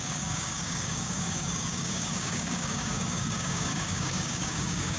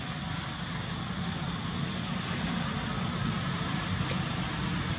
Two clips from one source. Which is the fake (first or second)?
first